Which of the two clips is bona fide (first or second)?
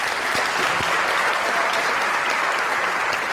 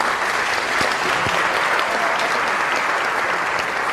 second